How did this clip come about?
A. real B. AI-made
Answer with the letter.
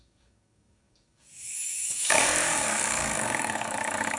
B